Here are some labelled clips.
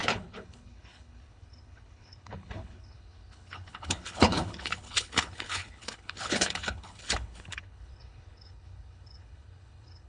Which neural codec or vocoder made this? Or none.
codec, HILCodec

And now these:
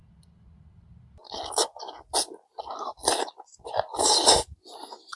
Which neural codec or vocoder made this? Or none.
none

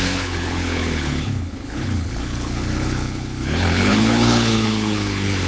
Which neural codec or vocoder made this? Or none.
codec, HILCodec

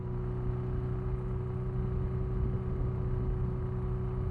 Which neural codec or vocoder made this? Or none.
none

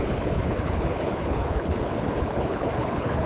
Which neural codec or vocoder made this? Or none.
codec, HILCodec